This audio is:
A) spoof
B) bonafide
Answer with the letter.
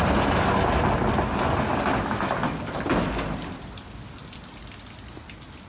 B